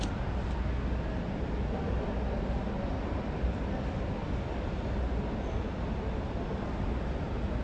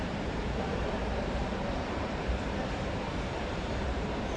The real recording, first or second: first